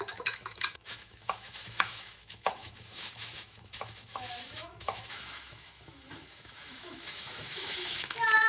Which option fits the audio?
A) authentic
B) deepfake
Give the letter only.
B